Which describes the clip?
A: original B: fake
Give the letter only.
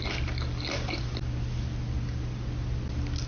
A